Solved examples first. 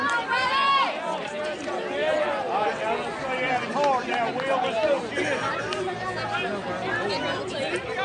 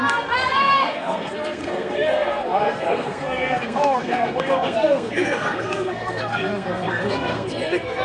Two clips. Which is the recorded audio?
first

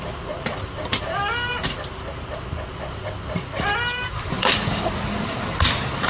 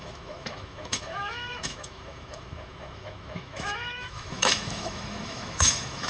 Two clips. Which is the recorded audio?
first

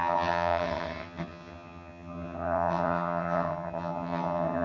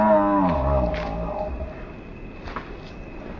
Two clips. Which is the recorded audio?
second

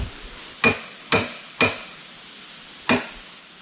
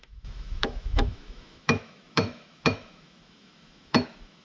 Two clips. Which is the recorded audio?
first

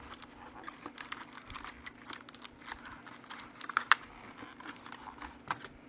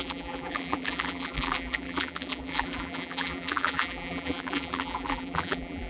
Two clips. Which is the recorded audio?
first